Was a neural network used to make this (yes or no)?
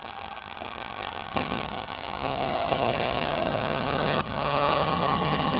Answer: yes